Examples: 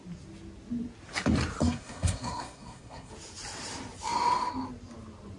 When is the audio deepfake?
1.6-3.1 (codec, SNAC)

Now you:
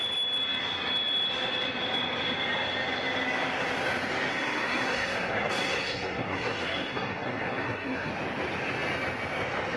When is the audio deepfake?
4.3-8.1 (codec, SNAC)